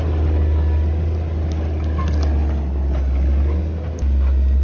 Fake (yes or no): no